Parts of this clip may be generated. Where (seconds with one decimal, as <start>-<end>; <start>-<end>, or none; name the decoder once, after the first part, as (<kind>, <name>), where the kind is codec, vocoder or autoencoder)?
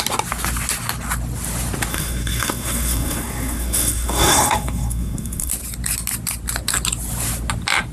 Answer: 1.9-5.5 (codec, SNAC)